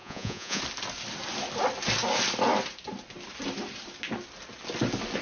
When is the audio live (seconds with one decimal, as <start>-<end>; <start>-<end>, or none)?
0.6-5.2

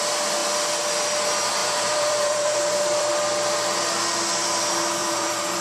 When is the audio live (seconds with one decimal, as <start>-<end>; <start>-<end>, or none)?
0.0-1.6; 3.1-5.0

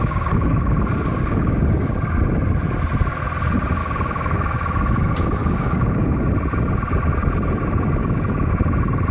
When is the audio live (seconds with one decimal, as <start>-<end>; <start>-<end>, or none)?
2.2-3.8; 6.3-8.0; 8.5-9.1

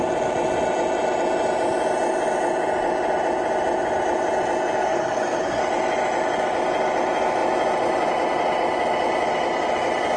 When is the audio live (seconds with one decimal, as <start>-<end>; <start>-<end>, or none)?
0.0-4.8; 5.6-10.2